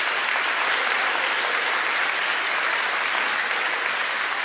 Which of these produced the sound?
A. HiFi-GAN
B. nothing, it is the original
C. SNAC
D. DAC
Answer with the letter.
B